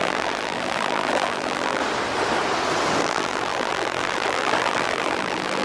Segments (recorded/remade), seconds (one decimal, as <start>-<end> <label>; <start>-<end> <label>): 0.0-1.8 remade; 1.8-3.0 recorded; 3.0-5.6 remade